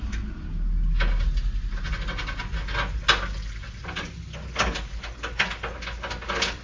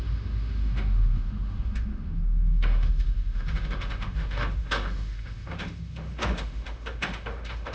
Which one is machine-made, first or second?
second